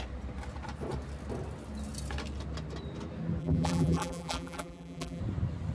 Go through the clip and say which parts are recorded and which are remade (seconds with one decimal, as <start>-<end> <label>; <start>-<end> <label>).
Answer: 0.0-3.4 recorded; 3.4-5.2 remade; 5.2-5.7 recorded

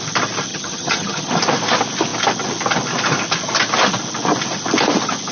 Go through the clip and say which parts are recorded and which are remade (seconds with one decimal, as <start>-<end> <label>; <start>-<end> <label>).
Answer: 0.0-0.5 recorded; 0.5-1.3 remade; 1.3-5.3 recorded

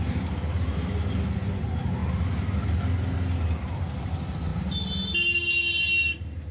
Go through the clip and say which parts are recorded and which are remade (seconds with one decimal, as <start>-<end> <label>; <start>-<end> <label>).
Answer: 0.0-6.5 recorded